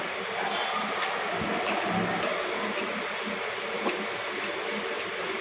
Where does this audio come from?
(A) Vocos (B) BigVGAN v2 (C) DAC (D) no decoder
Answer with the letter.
D